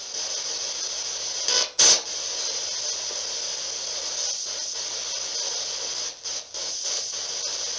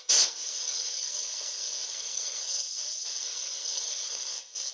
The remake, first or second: second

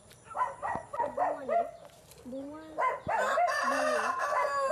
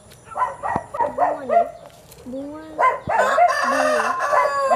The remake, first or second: first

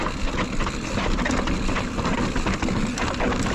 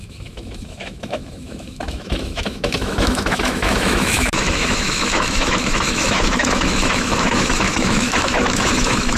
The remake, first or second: second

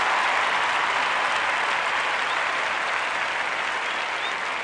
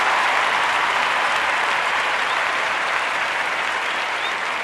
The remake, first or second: second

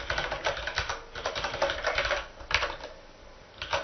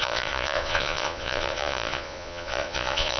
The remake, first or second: second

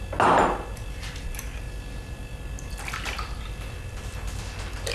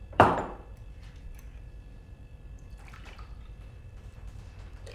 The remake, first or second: second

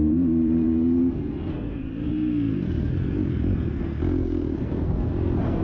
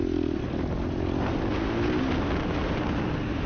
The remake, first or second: first